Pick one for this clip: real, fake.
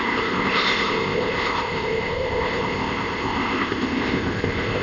fake